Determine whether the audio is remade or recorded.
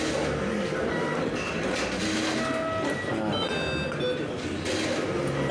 recorded